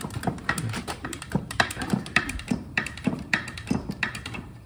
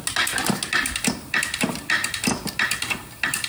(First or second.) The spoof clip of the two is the first